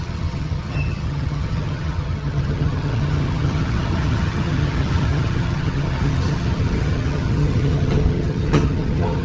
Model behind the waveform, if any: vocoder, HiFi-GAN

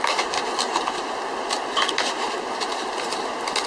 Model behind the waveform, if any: none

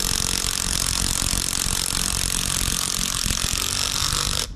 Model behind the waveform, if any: none